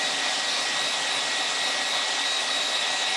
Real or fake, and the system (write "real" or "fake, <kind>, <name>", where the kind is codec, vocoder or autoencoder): real